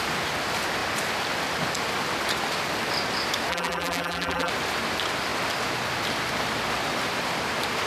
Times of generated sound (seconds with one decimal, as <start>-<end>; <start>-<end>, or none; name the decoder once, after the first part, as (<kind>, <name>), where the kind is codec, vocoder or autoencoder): 3.5-4.5 (vocoder, BigVGAN v2)